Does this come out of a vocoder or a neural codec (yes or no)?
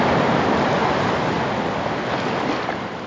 no